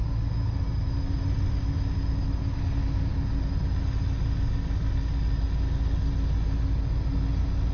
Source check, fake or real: real